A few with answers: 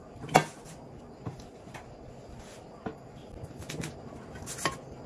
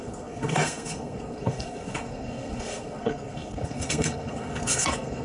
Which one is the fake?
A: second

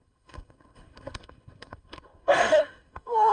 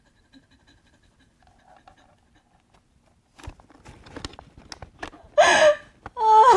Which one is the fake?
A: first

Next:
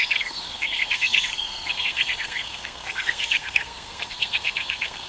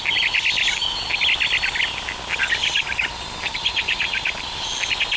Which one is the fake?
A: first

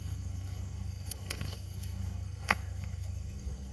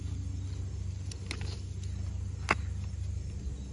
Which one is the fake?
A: first